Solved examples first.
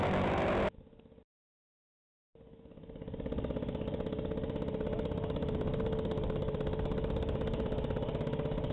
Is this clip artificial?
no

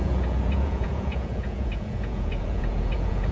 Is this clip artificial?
yes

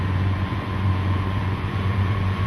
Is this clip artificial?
yes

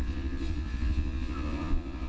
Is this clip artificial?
yes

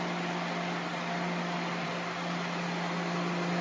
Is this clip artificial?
no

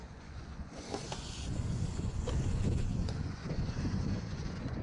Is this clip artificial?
yes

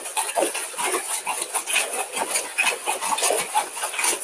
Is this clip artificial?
yes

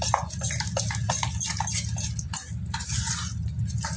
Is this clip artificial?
no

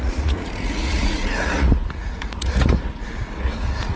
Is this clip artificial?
yes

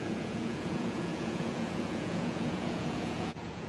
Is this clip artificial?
yes